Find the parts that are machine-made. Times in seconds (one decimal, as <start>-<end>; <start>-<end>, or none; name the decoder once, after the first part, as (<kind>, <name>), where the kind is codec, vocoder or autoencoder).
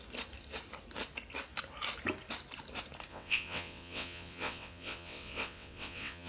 3.1-6.3 (vocoder, WaveNeXt)